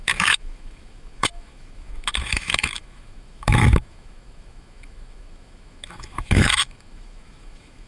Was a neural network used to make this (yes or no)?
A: yes